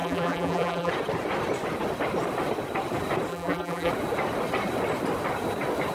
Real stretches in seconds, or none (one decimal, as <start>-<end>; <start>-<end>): 0.9-3.3; 3.9-5.9

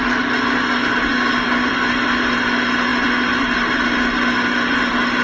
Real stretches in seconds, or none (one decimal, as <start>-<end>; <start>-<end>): 0.0-1.1; 1.7-5.2

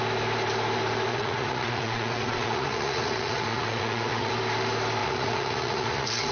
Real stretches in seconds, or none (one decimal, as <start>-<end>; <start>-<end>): 0.0-1.1; 4.3-5.0

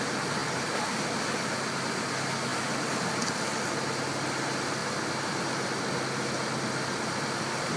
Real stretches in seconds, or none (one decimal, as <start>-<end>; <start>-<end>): 0.0-7.8

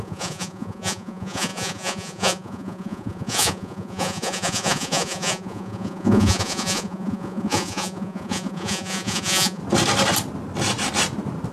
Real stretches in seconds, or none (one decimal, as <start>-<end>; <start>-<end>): 9.6-11.5

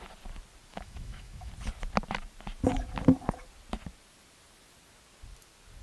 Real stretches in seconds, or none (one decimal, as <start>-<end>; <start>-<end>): 0.0-0.7; 1.5-5.8

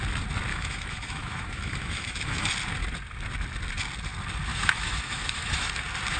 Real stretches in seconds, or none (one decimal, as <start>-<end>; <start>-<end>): 0.0-0.5; 2.5-4.5; 5.7-6.2

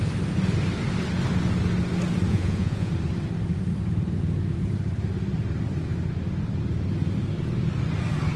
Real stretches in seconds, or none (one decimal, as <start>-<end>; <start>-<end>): 0.0-2.3; 2.9-8.4